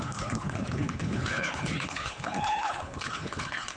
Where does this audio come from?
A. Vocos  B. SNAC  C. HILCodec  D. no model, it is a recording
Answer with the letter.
C